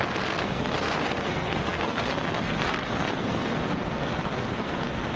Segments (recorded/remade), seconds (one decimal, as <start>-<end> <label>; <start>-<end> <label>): 0.0-5.2 remade